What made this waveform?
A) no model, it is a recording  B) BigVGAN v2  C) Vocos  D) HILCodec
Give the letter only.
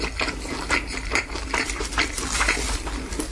A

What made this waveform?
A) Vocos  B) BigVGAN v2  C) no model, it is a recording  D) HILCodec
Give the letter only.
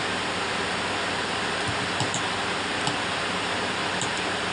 C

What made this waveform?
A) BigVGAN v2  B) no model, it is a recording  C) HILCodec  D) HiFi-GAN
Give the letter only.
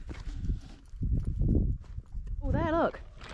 B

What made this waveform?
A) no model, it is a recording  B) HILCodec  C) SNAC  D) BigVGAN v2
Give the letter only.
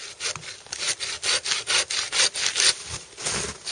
A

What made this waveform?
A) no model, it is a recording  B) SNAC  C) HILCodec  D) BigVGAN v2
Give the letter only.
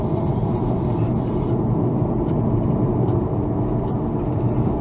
A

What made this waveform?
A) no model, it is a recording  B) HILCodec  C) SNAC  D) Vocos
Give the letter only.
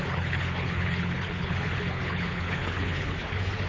B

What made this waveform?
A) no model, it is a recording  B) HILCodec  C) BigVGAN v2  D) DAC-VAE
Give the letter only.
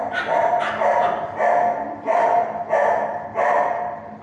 A